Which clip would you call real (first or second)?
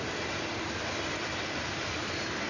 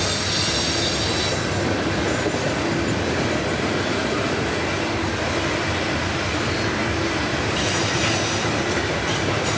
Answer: second